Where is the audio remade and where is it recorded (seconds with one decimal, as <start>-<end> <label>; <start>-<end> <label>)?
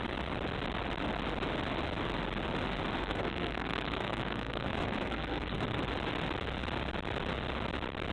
0.0-3.0 recorded; 3.0-5.9 remade; 5.9-8.1 recorded